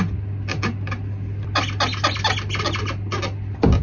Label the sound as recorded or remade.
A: recorded